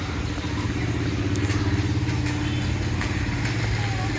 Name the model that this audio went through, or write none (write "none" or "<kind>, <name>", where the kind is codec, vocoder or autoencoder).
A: none